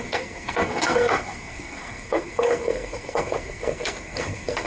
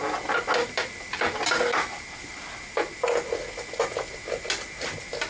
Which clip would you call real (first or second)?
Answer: second